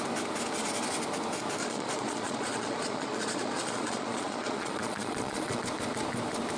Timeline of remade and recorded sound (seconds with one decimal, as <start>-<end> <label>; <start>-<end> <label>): 0.0-1.6 recorded; 1.6-5.6 remade; 5.6-6.6 recorded